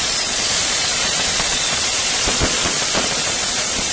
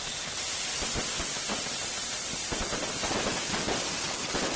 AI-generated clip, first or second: first